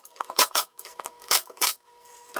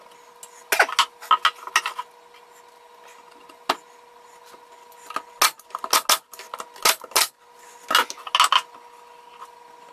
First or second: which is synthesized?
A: first